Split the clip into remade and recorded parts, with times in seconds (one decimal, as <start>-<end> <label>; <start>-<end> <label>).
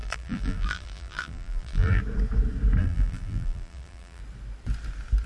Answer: 0.0-2.0 remade; 2.0-2.8 recorded; 2.8-4.2 remade; 4.2-5.3 recorded